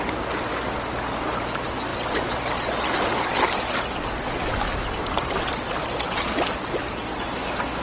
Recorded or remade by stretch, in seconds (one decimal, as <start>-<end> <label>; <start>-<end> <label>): 0.0-7.8 recorded